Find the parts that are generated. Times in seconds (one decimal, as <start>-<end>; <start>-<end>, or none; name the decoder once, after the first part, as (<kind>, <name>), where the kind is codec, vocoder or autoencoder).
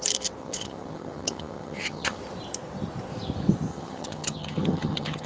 0.4-2.2 (vocoder, HiFi-GAN); 3.7-5.3